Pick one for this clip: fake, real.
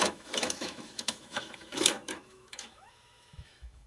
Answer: fake